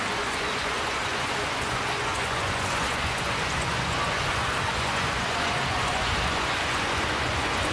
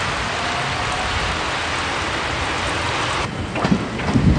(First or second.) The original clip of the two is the second